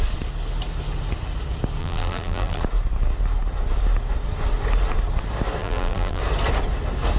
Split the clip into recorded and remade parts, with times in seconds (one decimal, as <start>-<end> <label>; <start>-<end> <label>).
0.0-1.8 recorded; 1.8-2.6 remade; 2.6-5.6 recorded; 5.6-6.2 remade; 6.2-7.2 recorded